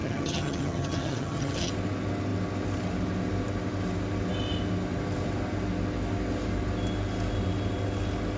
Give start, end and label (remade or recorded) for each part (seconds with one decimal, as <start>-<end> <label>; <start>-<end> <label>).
0.0-1.7 remade; 1.7-8.4 recorded